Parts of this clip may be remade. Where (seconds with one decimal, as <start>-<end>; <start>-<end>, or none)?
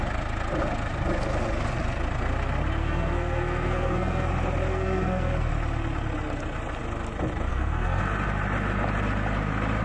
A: 2.8-4.3; 4.7-5.5; 7.5-8.0